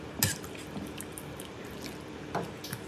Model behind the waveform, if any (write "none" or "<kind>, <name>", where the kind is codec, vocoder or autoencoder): none